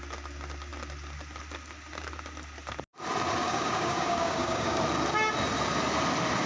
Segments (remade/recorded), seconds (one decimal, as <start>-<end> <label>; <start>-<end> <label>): 0.0-3.4 recorded; 3.4-4.8 remade; 4.8-6.5 recorded